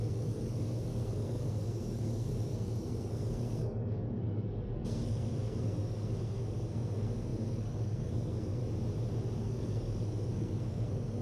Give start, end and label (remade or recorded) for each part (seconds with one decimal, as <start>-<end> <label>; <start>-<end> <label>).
0.0-8.6 remade; 8.6-9.4 recorded; 9.4-11.2 remade